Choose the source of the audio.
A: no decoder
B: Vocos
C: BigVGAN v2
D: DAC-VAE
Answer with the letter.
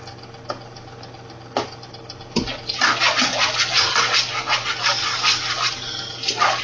A